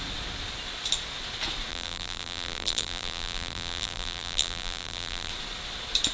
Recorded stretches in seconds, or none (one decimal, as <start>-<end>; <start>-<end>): 0.0-1.7; 5.3-6.1